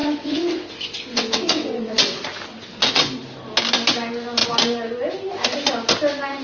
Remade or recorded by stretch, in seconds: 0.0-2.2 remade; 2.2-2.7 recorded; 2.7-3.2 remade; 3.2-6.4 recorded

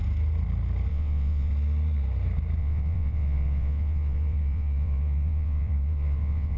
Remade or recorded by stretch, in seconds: 0.0-0.9 recorded; 0.9-1.5 remade; 1.5-2.6 recorded; 2.6-6.6 remade